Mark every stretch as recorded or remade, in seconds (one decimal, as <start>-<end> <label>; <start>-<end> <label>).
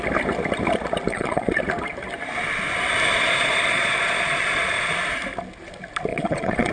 0.0-1.1 recorded; 1.1-1.6 remade; 1.6-3.1 recorded; 3.1-4.7 remade; 4.7-6.1 recorded; 6.1-6.7 remade